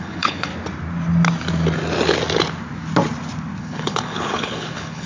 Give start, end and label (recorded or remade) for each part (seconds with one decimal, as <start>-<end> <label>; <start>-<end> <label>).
0.0-0.5 remade; 0.5-3.6 recorded; 3.6-5.1 remade